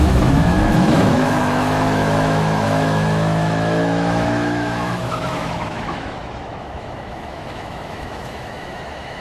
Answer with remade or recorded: remade